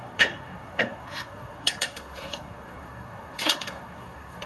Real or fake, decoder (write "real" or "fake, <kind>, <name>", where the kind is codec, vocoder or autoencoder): fake, codec, SNAC